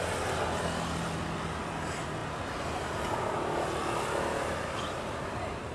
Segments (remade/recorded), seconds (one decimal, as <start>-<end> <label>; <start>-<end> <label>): 0.0-5.7 recorded